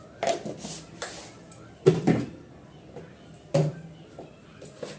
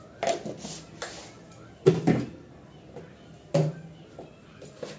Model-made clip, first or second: first